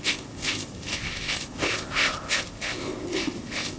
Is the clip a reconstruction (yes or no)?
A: yes